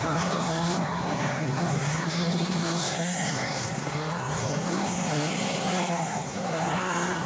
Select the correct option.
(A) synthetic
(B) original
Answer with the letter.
A